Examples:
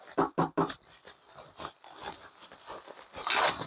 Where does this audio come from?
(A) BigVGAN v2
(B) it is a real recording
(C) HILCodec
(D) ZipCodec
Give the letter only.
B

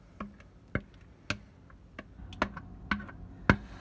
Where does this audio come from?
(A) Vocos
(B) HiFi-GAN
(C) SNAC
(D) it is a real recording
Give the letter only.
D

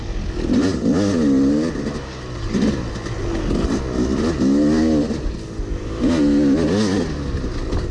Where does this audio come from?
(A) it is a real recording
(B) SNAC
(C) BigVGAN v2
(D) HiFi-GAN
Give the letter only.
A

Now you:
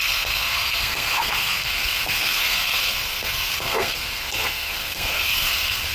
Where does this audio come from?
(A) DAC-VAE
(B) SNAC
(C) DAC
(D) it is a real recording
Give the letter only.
B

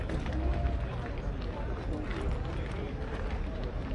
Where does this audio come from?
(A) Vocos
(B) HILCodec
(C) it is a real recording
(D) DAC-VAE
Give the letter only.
C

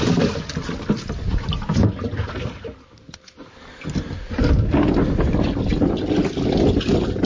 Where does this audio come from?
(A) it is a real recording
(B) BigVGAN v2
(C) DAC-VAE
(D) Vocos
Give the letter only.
A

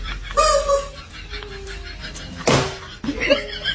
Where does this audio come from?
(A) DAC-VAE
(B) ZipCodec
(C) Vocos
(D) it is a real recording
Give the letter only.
D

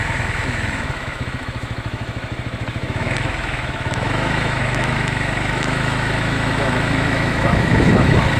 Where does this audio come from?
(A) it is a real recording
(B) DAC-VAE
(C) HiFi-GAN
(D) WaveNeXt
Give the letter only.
B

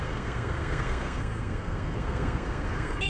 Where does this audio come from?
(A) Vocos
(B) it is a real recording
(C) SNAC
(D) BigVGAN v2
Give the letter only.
C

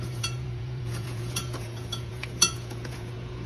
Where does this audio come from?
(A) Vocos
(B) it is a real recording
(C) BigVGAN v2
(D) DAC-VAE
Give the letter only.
A